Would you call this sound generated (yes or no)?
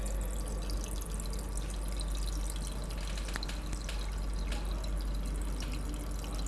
no